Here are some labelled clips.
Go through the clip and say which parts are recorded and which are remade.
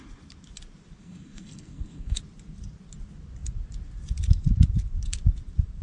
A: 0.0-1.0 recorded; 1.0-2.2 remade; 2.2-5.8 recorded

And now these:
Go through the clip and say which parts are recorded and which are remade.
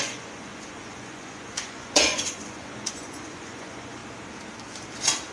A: 0.0-4.0 remade; 4.0-5.3 recorded